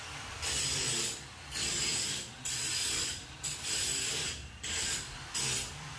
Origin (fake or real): fake